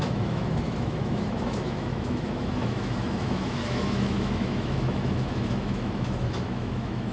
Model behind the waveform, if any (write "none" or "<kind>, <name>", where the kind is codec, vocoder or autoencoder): autoencoder, DAC-VAE